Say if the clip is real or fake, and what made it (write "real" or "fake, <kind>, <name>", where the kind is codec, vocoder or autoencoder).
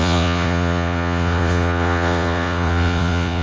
fake, vocoder, Vocos